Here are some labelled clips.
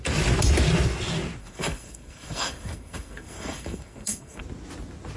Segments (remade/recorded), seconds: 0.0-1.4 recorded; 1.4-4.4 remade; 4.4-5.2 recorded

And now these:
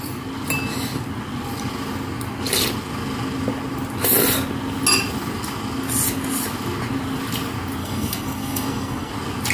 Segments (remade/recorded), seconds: 0.0-7.8 recorded; 7.8-9.1 remade; 9.1-9.5 recorded

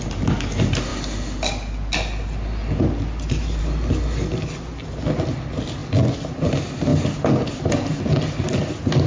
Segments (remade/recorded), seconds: 0.0-9.1 recorded